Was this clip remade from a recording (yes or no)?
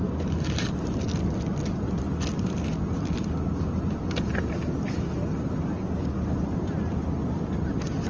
no